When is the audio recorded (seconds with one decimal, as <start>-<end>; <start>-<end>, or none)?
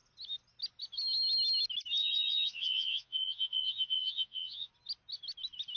0.0-2.0; 4.7-5.8